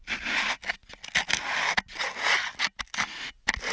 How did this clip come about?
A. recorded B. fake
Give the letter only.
A